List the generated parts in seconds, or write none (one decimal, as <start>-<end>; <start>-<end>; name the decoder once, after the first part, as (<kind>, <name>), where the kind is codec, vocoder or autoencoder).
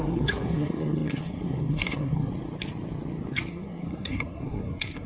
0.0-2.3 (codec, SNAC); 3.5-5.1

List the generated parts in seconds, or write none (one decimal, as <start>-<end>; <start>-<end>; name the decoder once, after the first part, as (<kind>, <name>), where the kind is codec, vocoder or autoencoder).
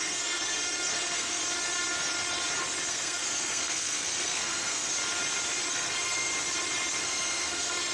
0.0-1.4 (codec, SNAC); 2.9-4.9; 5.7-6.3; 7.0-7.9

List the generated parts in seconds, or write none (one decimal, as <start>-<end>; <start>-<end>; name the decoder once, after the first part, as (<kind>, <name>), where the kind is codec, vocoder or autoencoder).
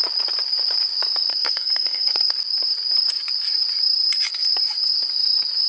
1.3-2.4 (codec, SNAC)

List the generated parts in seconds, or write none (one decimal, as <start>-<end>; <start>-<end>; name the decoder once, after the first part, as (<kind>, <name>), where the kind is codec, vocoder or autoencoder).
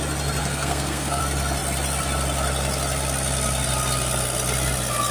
0.4-1.2 (codec, SNAC)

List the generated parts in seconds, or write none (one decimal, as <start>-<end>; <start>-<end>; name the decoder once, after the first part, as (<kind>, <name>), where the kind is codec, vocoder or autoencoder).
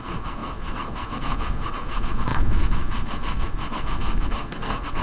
0.0-5.0 (codec, SNAC)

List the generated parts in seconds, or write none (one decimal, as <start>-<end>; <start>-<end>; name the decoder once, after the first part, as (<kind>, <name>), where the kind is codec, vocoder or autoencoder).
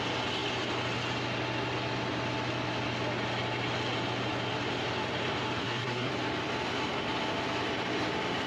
5.6-6.1 (codec, SNAC)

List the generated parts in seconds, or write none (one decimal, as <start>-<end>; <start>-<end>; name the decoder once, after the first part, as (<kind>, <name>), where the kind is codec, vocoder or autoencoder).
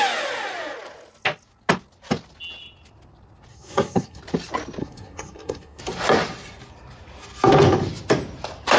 3.5-4.2 (codec, SNAC); 4.8-5.8